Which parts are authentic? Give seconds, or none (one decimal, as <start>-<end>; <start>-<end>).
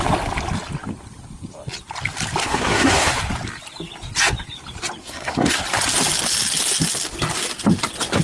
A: 0.0-2.4; 3.1-5.0; 5.6-8.2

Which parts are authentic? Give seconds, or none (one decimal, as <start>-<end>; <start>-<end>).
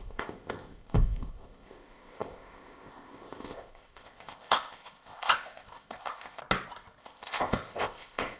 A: 6.4-7.0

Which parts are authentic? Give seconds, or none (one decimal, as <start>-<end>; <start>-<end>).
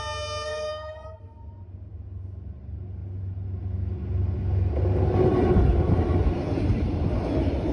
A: 0.0-0.5; 1.2-7.7